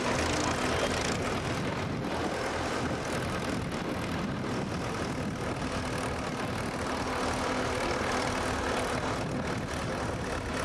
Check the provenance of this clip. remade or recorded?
recorded